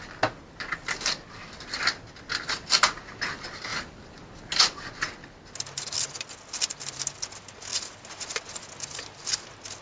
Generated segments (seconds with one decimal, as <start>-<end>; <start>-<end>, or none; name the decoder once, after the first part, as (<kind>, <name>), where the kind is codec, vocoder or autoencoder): none